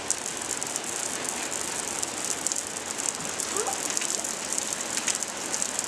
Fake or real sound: real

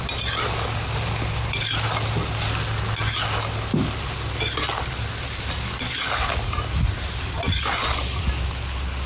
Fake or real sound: real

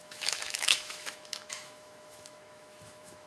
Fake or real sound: fake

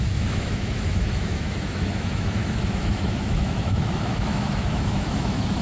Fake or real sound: fake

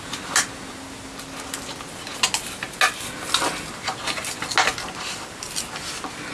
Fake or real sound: real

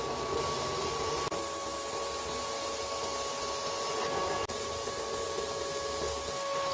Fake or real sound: real